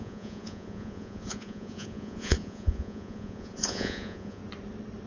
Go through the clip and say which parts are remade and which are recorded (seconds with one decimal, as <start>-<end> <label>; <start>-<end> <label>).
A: 0.0-4.4 remade; 4.4-5.1 recorded

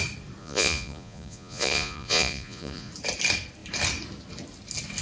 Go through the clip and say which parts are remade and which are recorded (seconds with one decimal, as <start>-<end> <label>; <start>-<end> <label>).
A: 0.0-0.4 recorded; 0.4-2.9 remade; 2.9-5.0 recorded

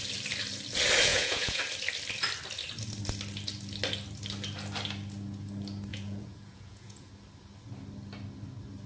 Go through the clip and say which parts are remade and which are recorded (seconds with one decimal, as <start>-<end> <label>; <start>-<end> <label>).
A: 0.0-1.1 recorded; 1.1-1.6 remade; 1.6-5.9 recorded; 5.9-7.1 remade; 7.1-8.9 recorded

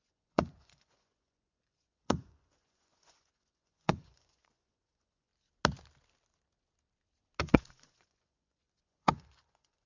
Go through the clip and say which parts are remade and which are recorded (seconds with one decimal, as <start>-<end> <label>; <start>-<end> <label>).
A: 0.0-5.3 remade; 5.3-7.4 recorded; 7.4-9.9 remade

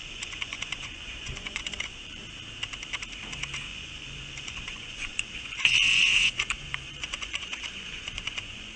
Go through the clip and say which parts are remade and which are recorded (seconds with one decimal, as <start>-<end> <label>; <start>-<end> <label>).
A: 0.0-2.2 remade; 2.2-3.7 recorded; 3.7-8.8 remade

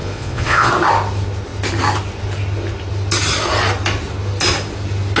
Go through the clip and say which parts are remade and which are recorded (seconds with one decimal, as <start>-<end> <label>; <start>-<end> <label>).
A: 0.0-0.7 remade; 0.7-5.2 recorded

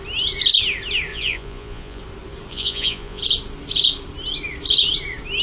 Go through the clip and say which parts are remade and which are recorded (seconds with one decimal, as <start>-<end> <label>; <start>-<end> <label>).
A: 0.0-1.1 recorded; 1.1-2.0 remade; 2.0-2.5 recorded; 2.5-3.2 remade; 3.2-5.4 recorded